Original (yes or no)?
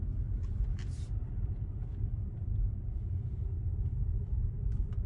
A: no